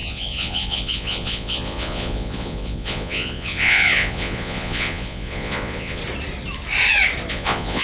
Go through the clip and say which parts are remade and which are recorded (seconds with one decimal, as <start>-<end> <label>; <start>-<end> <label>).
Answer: 0.0-6.0 remade; 6.0-7.3 recorded; 7.3-7.8 remade